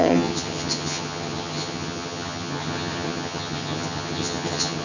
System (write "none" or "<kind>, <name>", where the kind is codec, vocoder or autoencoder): vocoder, HiFi-GAN